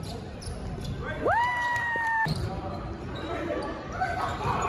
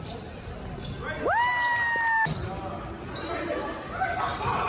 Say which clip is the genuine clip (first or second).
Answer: second